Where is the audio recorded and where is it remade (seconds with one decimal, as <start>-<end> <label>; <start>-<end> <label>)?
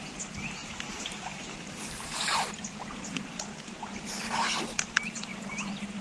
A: 0.0-0.6 recorded; 0.6-4.1 remade; 4.1-6.0 recorded